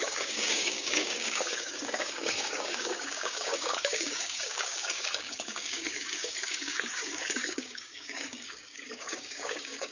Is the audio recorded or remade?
remade